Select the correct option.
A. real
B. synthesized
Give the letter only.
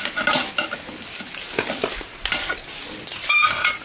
A